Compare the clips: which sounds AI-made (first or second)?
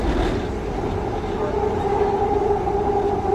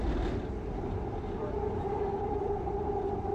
second